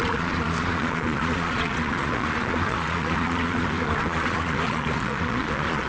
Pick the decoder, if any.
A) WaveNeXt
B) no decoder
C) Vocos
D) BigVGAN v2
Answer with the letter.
C